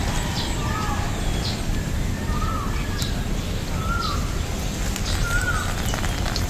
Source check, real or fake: real